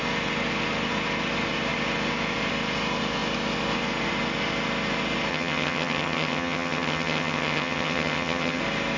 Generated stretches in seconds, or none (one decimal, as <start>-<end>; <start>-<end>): 5.3-8.6